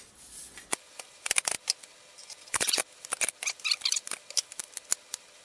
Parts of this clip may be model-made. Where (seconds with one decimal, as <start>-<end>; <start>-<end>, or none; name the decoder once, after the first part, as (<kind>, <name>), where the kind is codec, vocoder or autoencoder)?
0.4-1.2 (vocoder, Vocos); 2.2-2.8